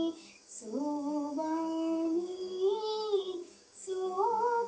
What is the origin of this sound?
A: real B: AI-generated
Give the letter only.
B